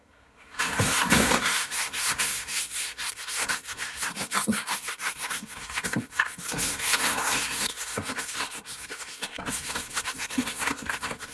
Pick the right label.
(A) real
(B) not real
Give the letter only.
B